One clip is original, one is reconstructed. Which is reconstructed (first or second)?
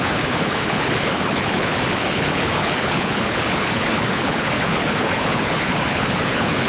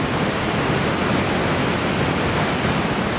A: first